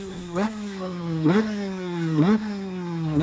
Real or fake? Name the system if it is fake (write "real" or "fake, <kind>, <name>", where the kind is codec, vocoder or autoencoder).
fake, codec, SNAC